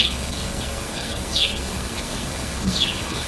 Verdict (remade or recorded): remade